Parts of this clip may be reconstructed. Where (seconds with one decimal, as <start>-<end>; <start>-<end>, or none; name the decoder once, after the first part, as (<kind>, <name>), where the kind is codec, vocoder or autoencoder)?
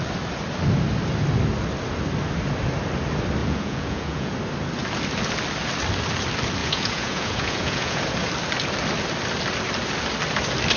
3.4-4.3 (vocoder, Vocos); 6.6-8.0